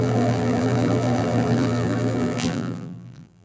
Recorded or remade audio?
remade